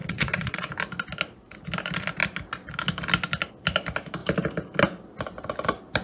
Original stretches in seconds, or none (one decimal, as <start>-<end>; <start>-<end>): 0.7-6.0